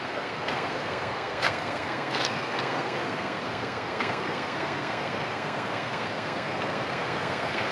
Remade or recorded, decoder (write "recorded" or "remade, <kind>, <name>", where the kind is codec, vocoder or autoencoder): remade, codec, SNAC